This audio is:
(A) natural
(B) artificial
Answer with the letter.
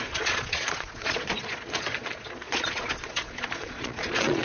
B